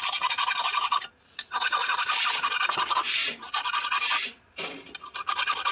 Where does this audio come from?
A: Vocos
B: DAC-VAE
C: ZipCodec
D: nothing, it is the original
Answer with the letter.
D